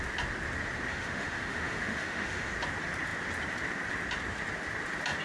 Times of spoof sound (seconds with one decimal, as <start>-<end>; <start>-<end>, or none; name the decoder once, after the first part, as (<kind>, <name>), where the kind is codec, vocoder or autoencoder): 0.9-2.5 (autoencoder, DAC-VAE)